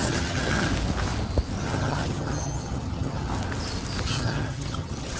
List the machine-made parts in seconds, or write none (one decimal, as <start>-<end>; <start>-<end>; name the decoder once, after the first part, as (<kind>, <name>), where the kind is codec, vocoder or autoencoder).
0.0-0.7 (vocoder, HiFi-GAN); 1.6-3.3; 4.0-5.2